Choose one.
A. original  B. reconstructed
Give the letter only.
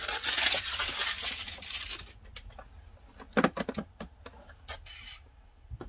A